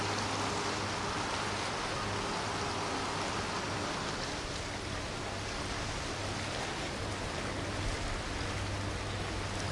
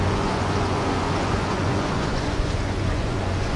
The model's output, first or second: second